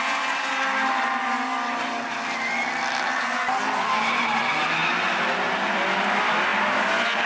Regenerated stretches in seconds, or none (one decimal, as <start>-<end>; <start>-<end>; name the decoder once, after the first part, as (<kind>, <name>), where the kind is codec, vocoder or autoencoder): none